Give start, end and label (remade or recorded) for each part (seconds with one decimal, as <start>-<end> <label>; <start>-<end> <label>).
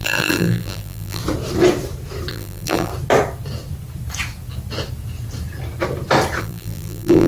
0.0-1.2 remade; 1.2-2.3 recorded; 2.3-2.9 remade; 2.9-6.4 recorded; 6.4-7.3 remade